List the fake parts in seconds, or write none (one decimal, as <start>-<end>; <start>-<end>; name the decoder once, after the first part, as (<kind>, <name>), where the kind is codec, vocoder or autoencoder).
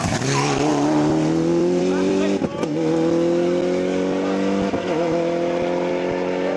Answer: none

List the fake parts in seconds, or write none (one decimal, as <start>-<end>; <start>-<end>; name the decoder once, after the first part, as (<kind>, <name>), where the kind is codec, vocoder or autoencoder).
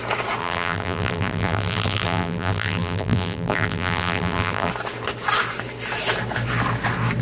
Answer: 0.4-4.7 (vocoder, BigVGAN v2)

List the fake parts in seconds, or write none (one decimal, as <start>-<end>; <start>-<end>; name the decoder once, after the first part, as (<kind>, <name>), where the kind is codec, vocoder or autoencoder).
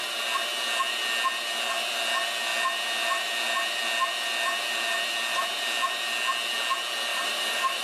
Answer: 7.1-7.8 (vocoder, BigVGAN v2)